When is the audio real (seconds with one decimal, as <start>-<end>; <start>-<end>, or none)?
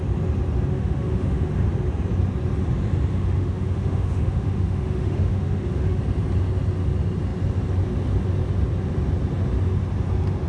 0.0-0.7; 1.5-3.1; 6.0-10.5